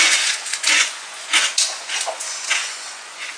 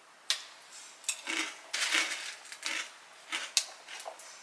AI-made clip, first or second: first